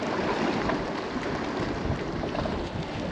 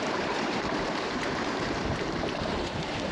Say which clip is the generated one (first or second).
second